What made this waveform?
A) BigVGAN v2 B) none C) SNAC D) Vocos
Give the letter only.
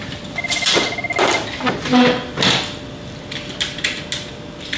B